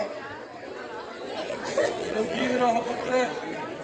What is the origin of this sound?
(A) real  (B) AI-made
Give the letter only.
B